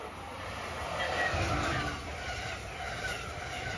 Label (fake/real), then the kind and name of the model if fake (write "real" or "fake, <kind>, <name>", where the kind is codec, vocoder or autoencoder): real